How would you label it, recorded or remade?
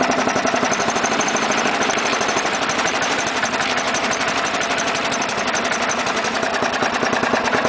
remade